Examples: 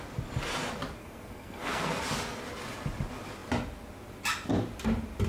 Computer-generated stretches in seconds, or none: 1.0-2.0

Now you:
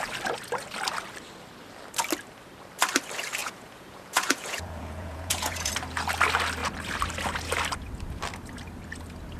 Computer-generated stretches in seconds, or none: 3.4-5.7

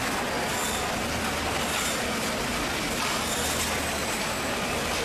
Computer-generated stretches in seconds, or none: 0.0-0.6; 1.2-2.5; 3.8-5.0

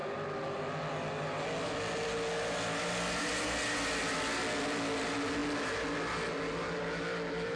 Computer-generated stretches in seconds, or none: none